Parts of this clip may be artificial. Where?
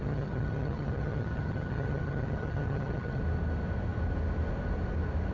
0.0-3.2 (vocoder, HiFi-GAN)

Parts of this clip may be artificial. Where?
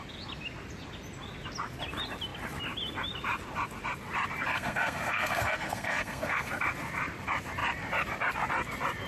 4.5-6.5 (codec, SNAC)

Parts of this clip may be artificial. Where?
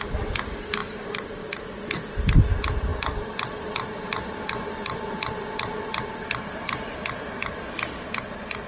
0.8-2.4 (vocoder, BigVGAN v2); 2.9-5.7; 6.6-8.0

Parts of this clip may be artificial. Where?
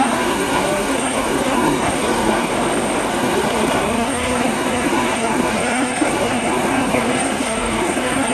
0.0-2.5 (codec, SNAC); 3.1-8.3